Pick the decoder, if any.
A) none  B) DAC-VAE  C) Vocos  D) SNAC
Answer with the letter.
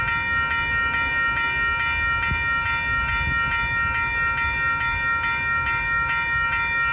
A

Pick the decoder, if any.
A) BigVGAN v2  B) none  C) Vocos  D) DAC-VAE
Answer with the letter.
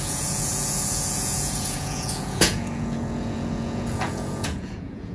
C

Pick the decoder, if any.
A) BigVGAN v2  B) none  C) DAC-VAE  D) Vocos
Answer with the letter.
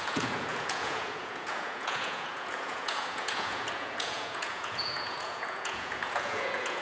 D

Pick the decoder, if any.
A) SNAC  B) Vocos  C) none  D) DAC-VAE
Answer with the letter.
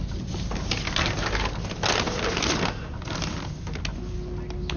C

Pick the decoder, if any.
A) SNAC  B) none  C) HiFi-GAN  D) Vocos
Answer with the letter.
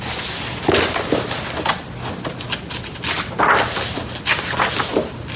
B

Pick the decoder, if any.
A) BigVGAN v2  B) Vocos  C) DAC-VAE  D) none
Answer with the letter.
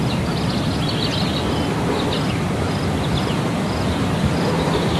D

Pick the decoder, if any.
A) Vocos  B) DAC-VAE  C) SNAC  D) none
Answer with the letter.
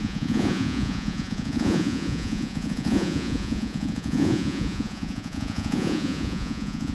A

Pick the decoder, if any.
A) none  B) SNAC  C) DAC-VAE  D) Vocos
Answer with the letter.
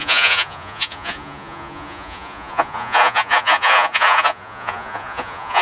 D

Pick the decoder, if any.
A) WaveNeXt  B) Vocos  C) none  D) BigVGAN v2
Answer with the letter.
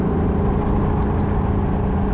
C